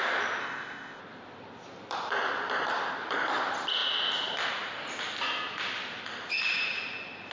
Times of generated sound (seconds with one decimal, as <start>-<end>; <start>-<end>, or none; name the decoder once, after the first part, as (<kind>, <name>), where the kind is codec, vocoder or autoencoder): 0.4-1.0 (codec, ZipCodec)